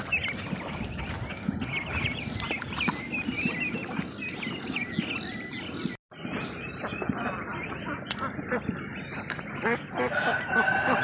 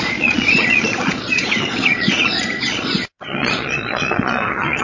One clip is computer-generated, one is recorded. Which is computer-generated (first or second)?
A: second